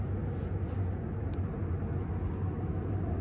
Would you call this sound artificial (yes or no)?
no